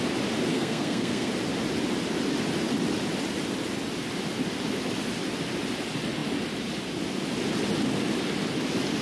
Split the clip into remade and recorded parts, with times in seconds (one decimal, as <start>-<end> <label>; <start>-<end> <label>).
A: 0.0-0.5 recorded; 0.5-1.3 remade; 1.3-9.0 recorded